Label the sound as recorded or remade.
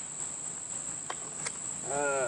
recorded